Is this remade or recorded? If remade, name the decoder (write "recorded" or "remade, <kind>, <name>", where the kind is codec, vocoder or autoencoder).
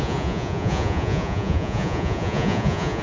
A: remade, vocoder, Vocos